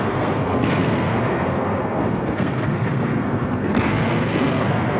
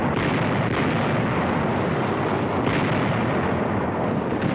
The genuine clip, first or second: second